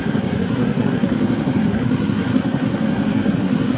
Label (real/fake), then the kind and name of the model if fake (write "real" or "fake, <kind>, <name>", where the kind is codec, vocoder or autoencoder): fake, codec, SNAC